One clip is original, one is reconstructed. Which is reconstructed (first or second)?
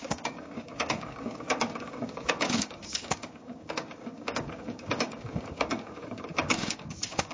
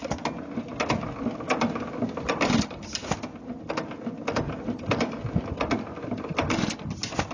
first